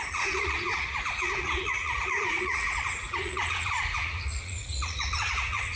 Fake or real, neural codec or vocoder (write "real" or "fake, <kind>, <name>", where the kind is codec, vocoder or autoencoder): fake, vocoder, Vocos